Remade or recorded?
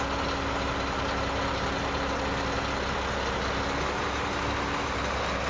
recorded